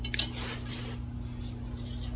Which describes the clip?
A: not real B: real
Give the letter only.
B